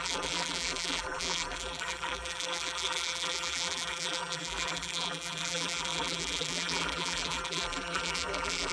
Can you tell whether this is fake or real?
fake